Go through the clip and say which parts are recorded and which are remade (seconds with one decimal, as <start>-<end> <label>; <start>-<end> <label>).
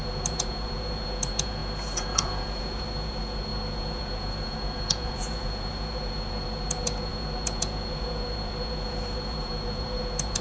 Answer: 0.0-10.4 remade